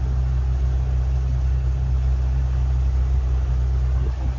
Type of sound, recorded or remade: recorded